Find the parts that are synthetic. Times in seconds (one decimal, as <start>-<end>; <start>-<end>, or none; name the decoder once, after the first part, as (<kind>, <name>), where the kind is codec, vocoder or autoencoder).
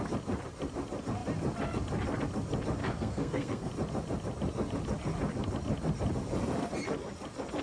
2.8-3.7 (codec, SNAC)